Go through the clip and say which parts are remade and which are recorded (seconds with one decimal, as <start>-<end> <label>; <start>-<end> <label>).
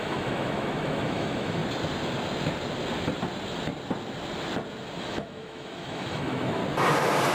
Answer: 0.0-1.6 remade; 1.6-5.0 recorded; 5.0-6.6 remade; 6.6-7.3 recorded